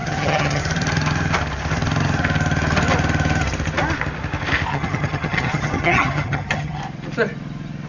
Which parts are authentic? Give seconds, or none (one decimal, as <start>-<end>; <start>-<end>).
0.6-4.7; 6.8-7.9